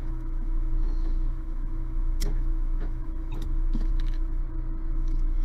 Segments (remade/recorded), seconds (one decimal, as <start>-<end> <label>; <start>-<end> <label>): 0.0-4.4 remade; 4.4-4.9 recorded; 4.9-5.4 remade